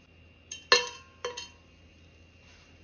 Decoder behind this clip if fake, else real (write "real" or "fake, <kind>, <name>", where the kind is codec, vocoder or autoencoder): real